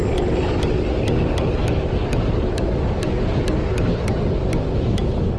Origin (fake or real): real